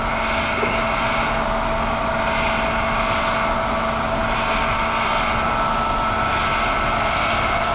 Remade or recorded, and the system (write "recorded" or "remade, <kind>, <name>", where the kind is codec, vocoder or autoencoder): recorded